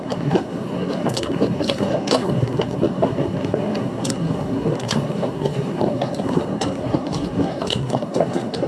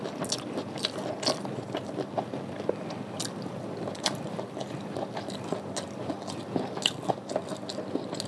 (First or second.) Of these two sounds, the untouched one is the second